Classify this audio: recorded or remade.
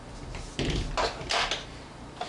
recorded